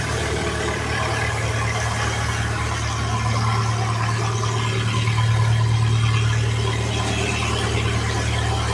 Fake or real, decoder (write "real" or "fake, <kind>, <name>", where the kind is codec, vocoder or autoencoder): real